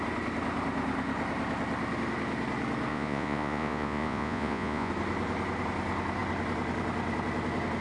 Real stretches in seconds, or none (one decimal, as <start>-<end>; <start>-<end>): 0.0-2.9; 4.9-7.8